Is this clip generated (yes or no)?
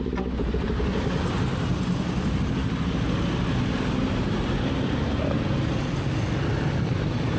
no